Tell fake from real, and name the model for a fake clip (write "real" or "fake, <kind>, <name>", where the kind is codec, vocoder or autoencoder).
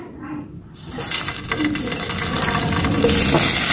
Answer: real